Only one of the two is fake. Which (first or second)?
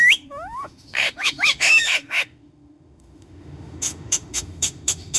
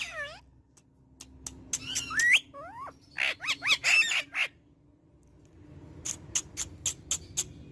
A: first